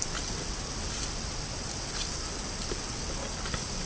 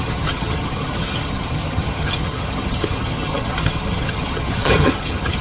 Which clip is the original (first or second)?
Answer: first